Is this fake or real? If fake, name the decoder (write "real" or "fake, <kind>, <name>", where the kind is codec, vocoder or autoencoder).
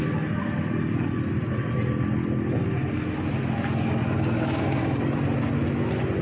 real